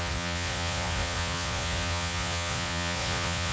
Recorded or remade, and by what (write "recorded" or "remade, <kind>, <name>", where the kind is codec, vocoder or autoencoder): remade, vocoder, Vocos